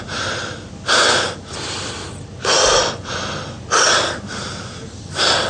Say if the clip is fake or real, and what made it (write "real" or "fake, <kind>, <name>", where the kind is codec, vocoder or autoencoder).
real